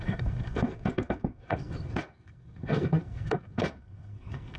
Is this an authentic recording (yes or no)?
no